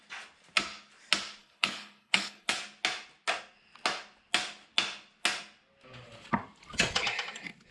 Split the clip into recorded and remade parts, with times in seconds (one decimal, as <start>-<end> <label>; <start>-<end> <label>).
0.0-1.4 recorded; 1.4-2.6 remade; 2.6-7.7 recorded